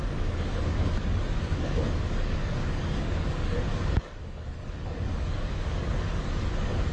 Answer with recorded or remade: remade